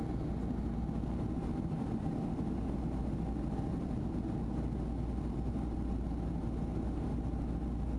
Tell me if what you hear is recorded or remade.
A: recorded